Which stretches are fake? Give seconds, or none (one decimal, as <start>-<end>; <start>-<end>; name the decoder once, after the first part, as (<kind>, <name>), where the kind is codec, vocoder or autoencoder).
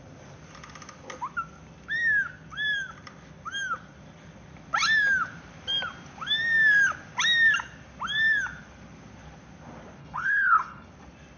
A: 10.0-10.9 (codec, HILCodec)